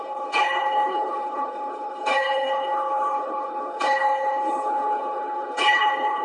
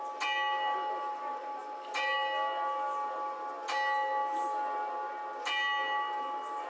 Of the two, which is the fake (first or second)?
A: first